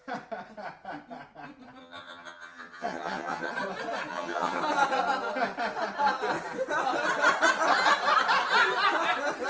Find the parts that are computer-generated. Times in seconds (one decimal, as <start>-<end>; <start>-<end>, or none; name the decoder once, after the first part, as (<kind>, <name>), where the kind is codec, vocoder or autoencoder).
1.8-3.5 (vocoder, HiFi-GAN); 4.1-4.6